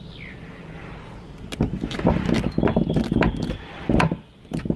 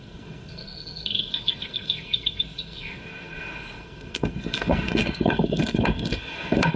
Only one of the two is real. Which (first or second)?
first